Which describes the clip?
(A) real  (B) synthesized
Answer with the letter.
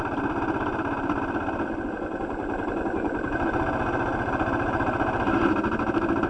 A